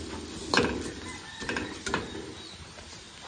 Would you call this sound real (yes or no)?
yes